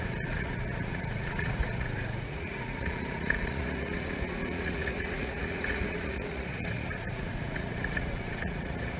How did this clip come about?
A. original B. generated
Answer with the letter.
B